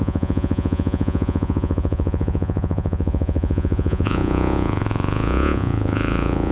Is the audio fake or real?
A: fake